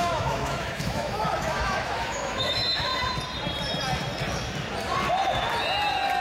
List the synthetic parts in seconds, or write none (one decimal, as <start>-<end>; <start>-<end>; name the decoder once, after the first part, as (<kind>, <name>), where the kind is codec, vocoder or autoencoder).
0.0-2.9 (autoencoder, DAC-VAE)